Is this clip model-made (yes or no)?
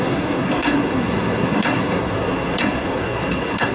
yes